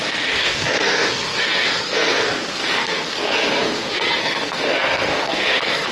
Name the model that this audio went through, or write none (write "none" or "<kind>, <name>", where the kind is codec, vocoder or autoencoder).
codec, SNAC